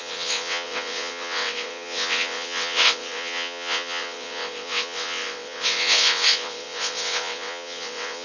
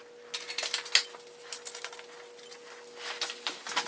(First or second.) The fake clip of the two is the first